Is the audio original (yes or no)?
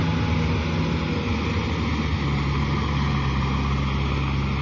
yes